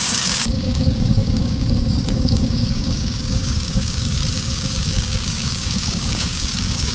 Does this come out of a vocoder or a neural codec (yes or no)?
yes